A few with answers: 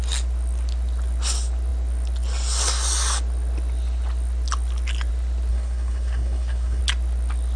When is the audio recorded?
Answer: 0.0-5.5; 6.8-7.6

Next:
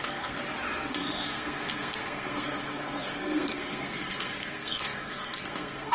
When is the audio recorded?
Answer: 0.4-0.9

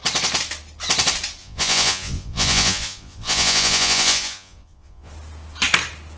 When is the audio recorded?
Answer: 0.0-1.4; 5.1-6.2

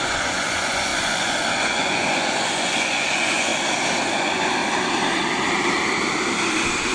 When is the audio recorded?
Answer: 3.5-4.1; 4.6-6.9